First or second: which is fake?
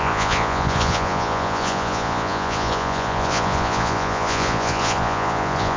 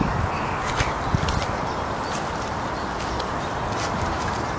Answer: first